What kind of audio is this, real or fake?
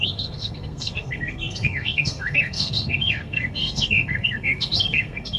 fake